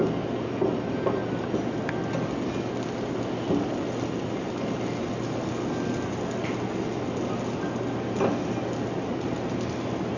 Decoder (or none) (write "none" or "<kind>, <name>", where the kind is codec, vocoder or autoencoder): none